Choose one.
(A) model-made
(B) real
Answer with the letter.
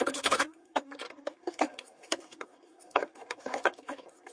A